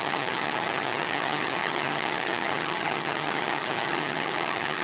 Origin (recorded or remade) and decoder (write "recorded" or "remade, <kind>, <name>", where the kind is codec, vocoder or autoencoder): remade, vocoder, HiFi-GAN